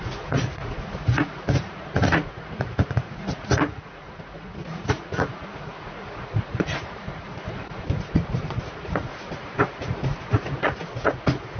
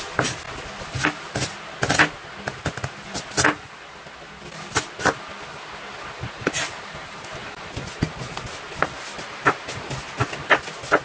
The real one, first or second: second